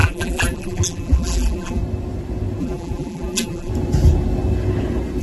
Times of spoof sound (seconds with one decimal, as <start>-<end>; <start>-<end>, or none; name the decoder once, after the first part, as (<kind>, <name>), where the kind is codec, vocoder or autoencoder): 0.0-1.8 (vocoder, BigVGAN v2); 2.6-3.7